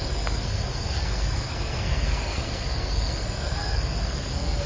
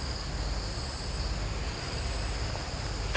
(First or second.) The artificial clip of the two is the first